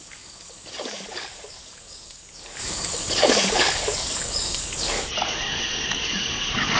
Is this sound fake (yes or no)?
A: yes